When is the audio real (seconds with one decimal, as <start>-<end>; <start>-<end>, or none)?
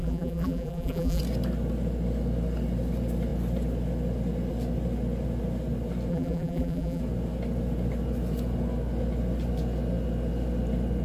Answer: 1.2-6.1; 7.0-11.0